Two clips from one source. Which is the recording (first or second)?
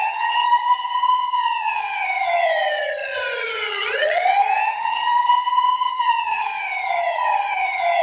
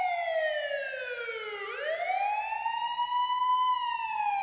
second